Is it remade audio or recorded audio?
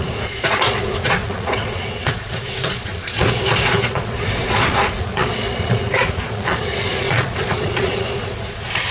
remade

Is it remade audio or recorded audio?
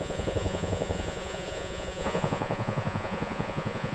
remade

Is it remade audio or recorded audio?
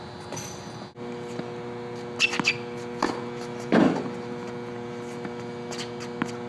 recorded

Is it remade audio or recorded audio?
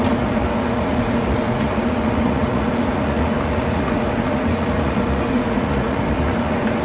remade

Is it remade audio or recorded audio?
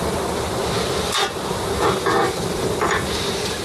recorded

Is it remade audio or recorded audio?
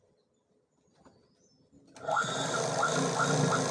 recorded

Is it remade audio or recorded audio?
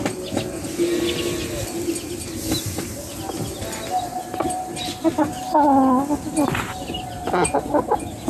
recorded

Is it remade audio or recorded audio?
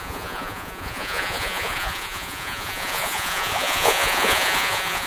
remade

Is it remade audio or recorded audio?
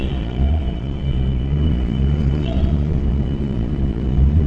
remade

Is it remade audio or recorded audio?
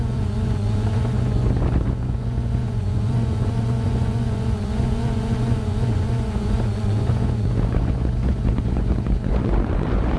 remade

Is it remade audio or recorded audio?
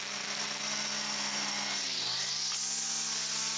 recorded